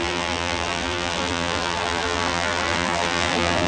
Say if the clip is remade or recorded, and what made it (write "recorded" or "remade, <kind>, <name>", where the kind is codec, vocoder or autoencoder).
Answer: remade, vocoder, BigVGAN v2